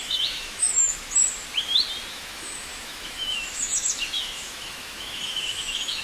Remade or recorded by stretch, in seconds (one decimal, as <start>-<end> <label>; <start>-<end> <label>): 0.0-1.2 remade; 1.2-2.1 recorded; 2.1-6.0 remade